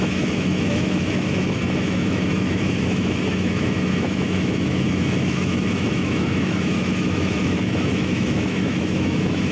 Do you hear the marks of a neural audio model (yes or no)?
yes